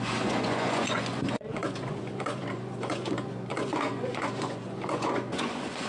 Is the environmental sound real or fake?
fake